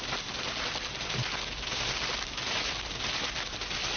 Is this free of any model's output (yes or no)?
yes